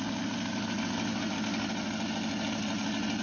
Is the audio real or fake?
real